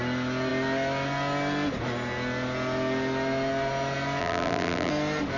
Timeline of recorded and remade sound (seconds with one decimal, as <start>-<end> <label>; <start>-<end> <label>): 0.0-4.2 recorded; 4.2-4.9 remade; 4.9-5.4 recorded